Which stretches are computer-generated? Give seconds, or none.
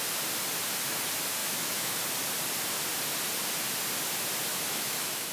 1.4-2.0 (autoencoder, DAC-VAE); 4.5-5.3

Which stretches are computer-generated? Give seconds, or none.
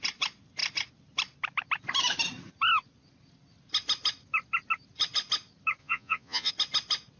5.8-6.5 (vocoder, Vocos)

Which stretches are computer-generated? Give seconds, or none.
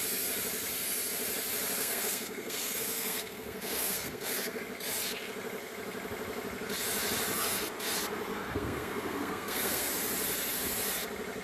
1.8-4.6 (codec, SNAC); 8.3-9.9